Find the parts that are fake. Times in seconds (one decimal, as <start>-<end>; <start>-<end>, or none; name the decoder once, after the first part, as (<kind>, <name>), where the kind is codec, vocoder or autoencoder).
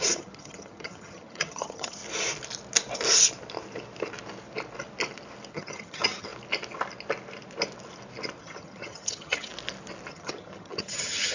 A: 0.0-2.0 (vocoder, HiFi-GAN); 5.5-6.3; 8.4-9.5; 10.1-11.3